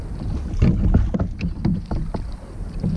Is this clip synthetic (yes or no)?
no